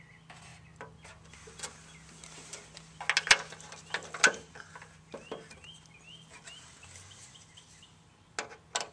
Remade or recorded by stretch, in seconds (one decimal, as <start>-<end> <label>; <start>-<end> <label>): 0.0-8.9 recorded